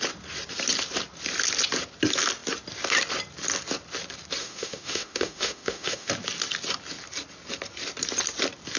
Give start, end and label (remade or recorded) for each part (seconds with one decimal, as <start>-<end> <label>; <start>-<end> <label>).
0.0-4.4 recorded; 4.4-6.1 remade; 6.1-8.8 recorded